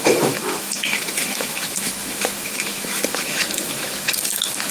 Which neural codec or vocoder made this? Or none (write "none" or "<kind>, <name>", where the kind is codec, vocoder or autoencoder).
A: autoencoder, DAC-VAE